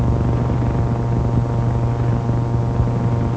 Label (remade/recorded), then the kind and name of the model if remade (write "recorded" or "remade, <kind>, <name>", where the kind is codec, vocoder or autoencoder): recorded